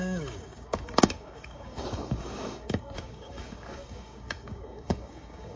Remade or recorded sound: remade